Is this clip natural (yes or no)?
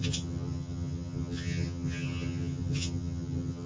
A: no